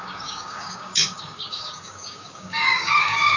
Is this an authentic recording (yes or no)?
no